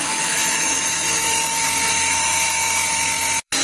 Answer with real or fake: fake